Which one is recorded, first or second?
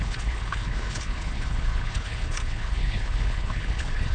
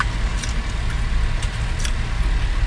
second